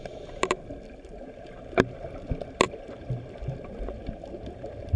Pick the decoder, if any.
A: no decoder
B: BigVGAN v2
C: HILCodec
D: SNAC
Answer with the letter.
A